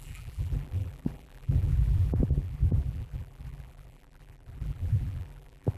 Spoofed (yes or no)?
yes